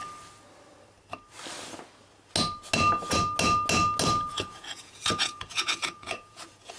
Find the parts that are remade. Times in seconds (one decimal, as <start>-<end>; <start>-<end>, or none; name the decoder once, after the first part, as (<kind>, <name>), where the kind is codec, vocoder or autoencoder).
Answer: 4.3-6.8 (vocoder, Vocos)

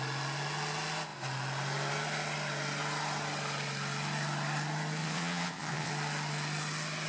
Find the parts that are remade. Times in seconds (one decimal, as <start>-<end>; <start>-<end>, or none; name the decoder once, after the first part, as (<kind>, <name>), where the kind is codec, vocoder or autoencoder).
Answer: 5.0-5.9 (vocoder, Vocos)